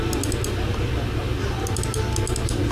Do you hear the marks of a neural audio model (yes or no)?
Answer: no